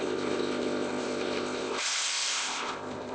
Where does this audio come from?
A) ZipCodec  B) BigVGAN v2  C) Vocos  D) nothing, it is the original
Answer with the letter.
A